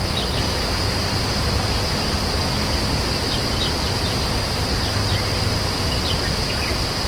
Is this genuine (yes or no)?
yes